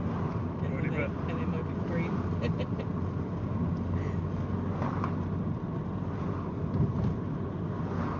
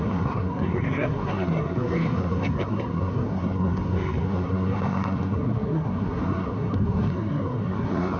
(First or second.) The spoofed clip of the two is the second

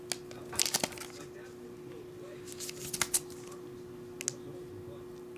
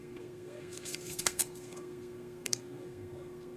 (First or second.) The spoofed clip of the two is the second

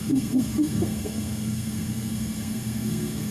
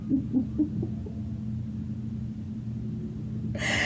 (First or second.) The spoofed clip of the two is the first